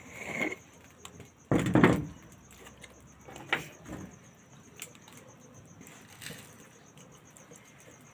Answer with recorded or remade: recorded